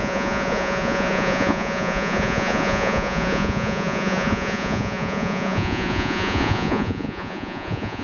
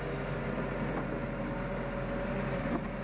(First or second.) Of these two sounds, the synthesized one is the first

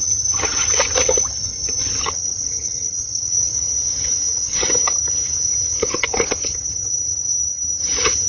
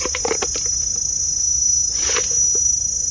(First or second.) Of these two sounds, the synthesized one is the first